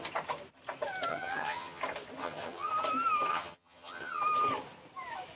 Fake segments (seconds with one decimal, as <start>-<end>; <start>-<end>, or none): 1.1-1.8; 2.2-2.7; 3.3-4.2